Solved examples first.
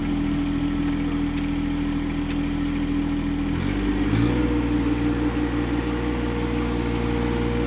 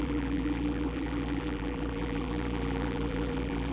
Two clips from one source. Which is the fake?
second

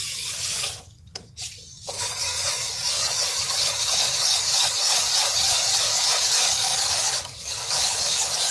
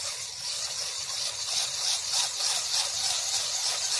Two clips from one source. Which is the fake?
first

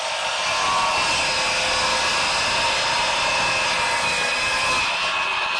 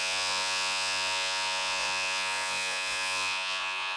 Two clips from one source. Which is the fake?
second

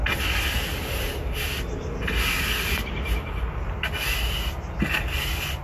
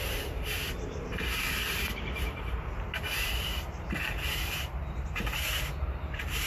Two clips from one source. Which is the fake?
second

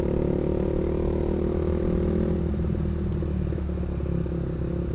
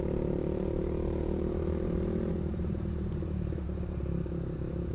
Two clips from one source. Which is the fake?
second